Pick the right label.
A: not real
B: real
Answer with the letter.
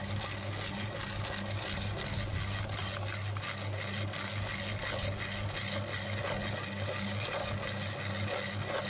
B